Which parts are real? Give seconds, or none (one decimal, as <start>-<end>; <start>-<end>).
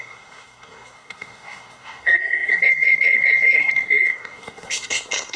none